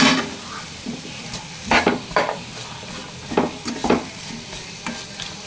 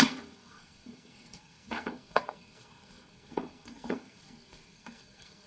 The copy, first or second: second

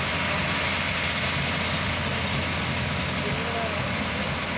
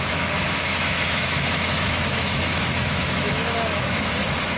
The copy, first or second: second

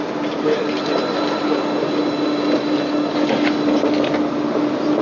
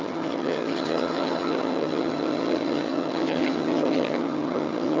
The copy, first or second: second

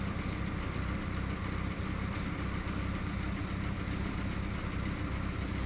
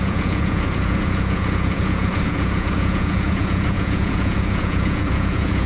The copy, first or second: second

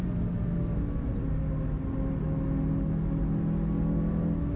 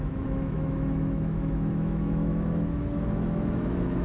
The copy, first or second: second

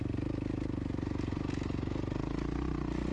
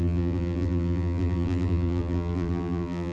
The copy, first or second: second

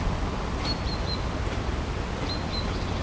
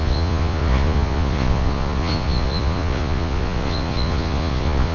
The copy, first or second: second